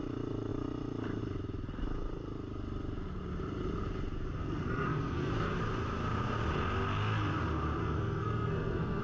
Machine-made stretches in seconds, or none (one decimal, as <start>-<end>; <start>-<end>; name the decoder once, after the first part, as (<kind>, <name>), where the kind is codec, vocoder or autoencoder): 4.4-5.3 (codec, SNAC); 7.8-9.0